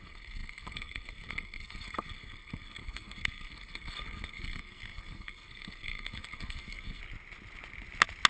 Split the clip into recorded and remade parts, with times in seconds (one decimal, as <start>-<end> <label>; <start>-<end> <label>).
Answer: 0.0-7.0 remade; 7.0-8.3 recorded